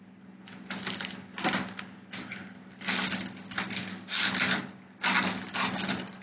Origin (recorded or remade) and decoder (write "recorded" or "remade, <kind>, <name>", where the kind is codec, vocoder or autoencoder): recorded